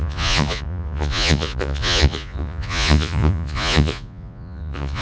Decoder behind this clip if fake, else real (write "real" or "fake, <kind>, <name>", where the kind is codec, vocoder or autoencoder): fake, vocoder, Vocos